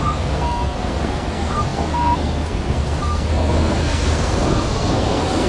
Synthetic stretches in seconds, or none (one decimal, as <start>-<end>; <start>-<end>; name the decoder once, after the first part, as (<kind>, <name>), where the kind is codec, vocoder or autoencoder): 0.0-5.5 (codec, SNAC)